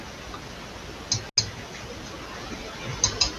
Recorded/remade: recorded